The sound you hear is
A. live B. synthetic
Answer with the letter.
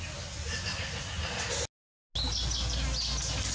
A